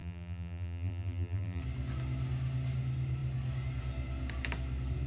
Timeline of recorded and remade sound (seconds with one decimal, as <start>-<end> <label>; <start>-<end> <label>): 0.0-1.6 remade; 1.6-5.1 recorded